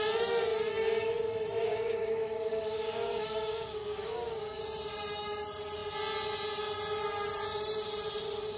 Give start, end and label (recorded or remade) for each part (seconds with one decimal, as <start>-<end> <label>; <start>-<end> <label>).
0.0-1.6 recorded; 1.6-4.6 remade; 4.6-8.6 recorded